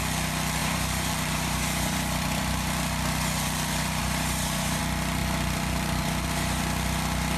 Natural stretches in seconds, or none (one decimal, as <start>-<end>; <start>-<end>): 0.0-0.6; 4.8-5.2; 6.6-7.4